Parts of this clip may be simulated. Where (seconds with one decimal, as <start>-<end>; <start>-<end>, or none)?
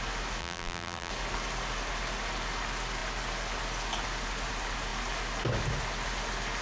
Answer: 0.4-1.1